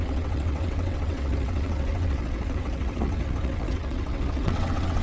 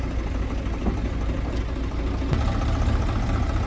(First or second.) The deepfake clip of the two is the first